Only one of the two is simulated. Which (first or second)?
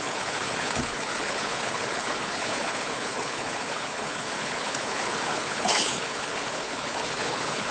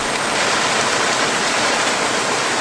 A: first